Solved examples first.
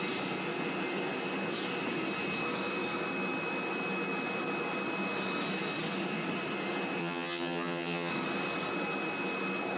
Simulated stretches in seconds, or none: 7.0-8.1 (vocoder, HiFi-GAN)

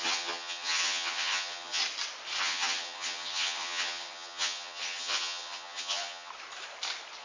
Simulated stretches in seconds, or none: 0.0-1.8 (vocoder, HiFi-GAN); 2.4-6.3

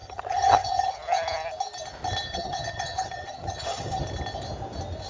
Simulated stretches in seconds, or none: 0.0-0.9 (vocoder, HiFi-GAN); 2.3-4.0